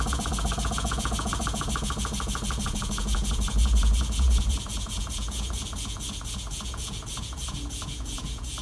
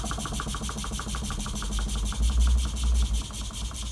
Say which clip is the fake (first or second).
first